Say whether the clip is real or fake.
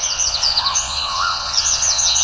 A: fake